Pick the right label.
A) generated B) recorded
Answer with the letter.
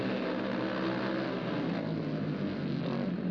B